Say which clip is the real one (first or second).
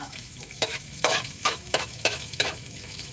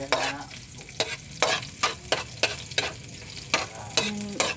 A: second